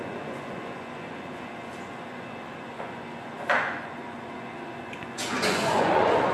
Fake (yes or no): yes